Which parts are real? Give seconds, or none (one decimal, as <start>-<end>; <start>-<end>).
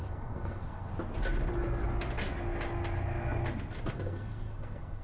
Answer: 0.9-3.9